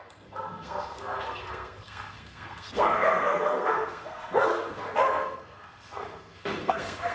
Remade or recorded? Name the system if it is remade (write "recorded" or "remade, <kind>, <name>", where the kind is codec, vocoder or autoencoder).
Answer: remade, codec, SNAC